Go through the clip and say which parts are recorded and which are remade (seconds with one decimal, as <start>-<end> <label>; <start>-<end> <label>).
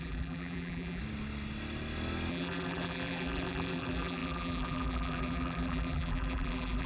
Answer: 0.0-1.0 remade; 1.0-2.3 recorded; 2.3-6.9 remade